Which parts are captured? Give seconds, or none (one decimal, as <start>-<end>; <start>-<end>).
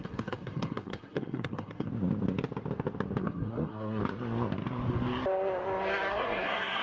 1.9-3.2; 4.0-6.1